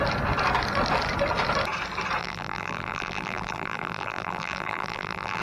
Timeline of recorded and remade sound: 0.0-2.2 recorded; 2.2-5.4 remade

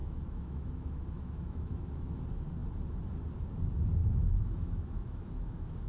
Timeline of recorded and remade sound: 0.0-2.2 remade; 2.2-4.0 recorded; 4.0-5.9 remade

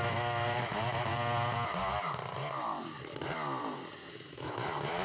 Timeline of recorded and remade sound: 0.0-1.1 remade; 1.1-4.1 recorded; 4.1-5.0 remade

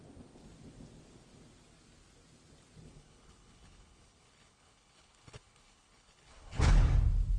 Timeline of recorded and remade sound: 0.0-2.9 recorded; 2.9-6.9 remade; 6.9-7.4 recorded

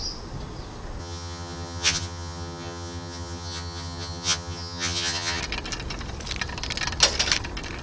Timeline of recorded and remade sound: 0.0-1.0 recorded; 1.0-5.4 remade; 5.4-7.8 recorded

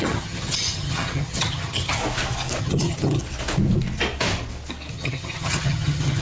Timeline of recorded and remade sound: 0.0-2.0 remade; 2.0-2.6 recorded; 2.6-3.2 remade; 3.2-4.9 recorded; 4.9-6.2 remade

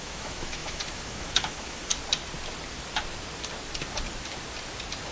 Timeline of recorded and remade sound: 0.0-1.9 remade; 1.9-5.1 recorded